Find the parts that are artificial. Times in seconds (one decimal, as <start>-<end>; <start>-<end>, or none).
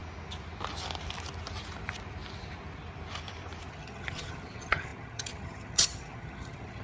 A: 3.7-6.8